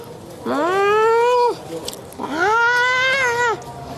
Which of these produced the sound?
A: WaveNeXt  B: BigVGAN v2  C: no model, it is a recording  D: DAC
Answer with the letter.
C